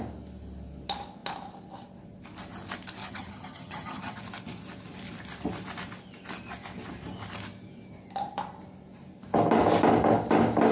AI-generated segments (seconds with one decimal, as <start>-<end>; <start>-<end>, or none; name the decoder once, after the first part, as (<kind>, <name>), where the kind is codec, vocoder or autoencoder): 3.0-4.2 (vocoder, HiFi-GAN)

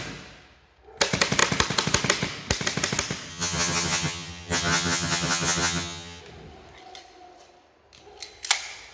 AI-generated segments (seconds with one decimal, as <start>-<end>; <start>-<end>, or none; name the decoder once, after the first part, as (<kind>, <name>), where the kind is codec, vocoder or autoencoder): 3.3-6.2 (vocoder, HiFi-GAN)

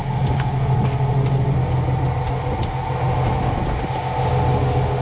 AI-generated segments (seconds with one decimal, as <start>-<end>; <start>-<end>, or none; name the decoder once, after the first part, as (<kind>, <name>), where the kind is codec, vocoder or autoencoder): none

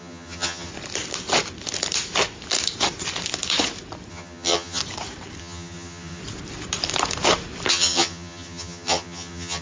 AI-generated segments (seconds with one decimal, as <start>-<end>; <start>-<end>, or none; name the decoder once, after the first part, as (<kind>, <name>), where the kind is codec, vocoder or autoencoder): 0.0-0.7 (vocoder, HiFi-GAN); 4.1-4.8; 5.4-6.2; 7.7-9.6

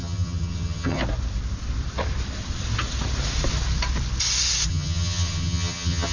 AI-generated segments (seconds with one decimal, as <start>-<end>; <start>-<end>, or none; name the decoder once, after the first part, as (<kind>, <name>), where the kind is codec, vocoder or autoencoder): 0.0-1.0 (vocoder, HiFi-GAN); 4.7-6.1

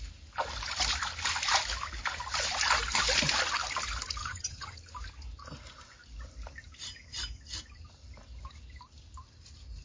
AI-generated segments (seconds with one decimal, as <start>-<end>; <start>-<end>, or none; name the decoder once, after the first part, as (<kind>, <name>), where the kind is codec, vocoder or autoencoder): 4.2-4.8 (vocoder, HiFi-GAN)